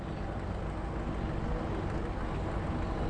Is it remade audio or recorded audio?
recorded